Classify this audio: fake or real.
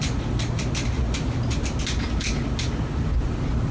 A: real